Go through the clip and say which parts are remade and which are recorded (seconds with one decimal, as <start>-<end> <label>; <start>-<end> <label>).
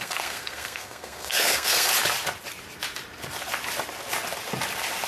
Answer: 0.0-1.9 remade; 1.9-5.1 recorded